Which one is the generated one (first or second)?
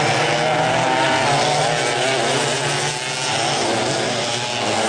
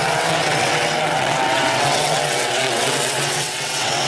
second